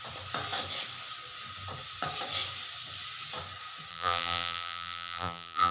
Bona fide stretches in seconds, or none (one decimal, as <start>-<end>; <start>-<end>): 0.0-3.9

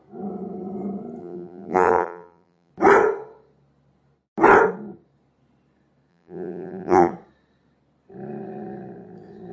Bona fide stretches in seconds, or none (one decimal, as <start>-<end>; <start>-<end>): 0.0-1.2; 2.7-6.1; 7.1-9.5

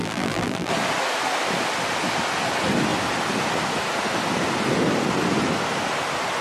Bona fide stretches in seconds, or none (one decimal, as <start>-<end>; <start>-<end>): 0.7-6.4

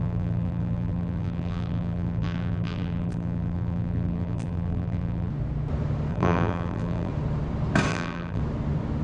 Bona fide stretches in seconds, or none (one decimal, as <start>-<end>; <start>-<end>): 5.3-6.1; 7.1-7.9; 8.4-9.0